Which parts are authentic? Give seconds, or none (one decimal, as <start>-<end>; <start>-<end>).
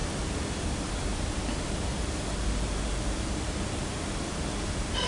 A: 0.0-0.9; 1.9-4.6